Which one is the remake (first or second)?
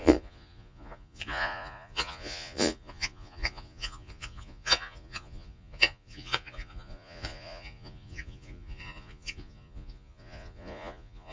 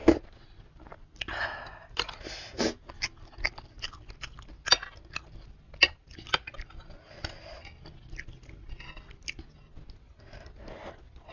first